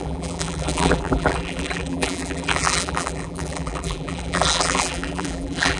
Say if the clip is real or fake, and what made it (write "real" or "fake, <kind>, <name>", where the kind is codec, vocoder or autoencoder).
fake, vocoder, BigVGAN v2